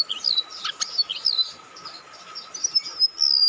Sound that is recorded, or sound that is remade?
recorded